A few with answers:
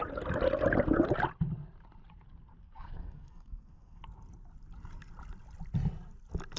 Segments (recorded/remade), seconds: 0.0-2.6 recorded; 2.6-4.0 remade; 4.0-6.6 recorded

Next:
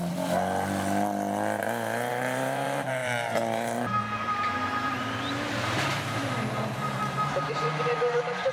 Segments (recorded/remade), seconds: 0.0-2.1 recorded; 2.1-8.5 remade

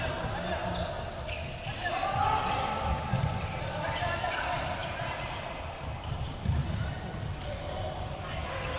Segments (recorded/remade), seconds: 0.0-8.8 recorded

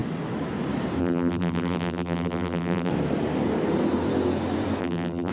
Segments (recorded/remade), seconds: 0.0-1.0 recorded; 1.0-2.9 remade; 2.9-4.8 recorded; 4.8-5.3 remade

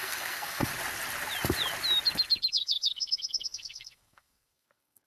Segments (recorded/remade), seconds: 0.0-0.7 remade; 0.7-2.5 recorded; 2.5-5.1 remade

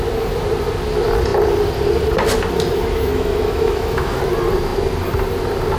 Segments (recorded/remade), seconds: 0.0-3.1 recorded; 3.1-4.2 remade; 4.2-5.8 recorded